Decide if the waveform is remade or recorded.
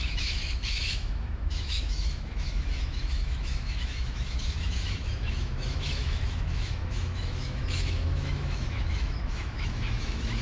remade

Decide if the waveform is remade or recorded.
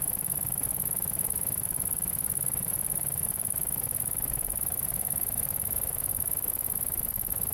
remade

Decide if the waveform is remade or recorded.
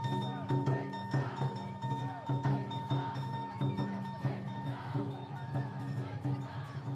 remade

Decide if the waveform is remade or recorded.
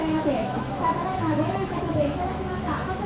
remade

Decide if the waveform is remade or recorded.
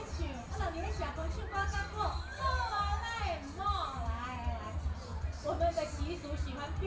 recorded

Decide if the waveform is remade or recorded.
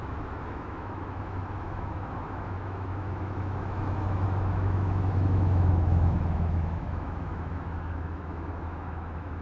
remade